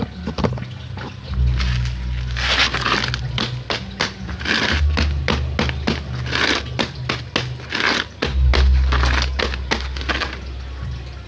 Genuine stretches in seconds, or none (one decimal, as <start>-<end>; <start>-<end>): 0.0-11.3

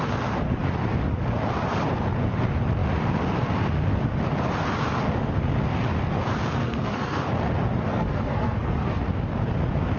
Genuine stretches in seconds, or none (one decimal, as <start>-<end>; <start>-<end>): 0.0-6.6; 7.2-7.9; 9.0-10.0

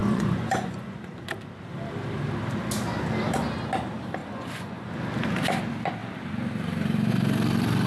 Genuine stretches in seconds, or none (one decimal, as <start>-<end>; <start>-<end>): 1.3-4.2; 4.9-7.9